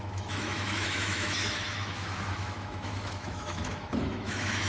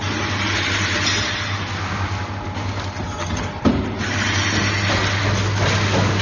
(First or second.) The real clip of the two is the second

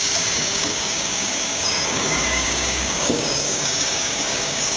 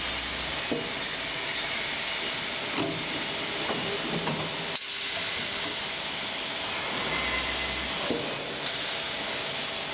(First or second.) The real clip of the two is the second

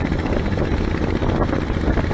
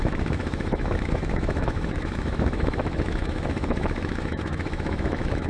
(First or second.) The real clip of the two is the first